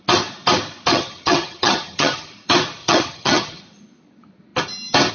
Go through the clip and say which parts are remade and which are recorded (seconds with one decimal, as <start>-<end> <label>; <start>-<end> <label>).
0.0-0.9 recorded; 0.9-2.3 remade; 2.3-2.8 recorded; 2.8-3.6 remade; 3.6-5.1 recorded